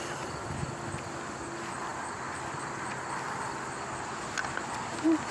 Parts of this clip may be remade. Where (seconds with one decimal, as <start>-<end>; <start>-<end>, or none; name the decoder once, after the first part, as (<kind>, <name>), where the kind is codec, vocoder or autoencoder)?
none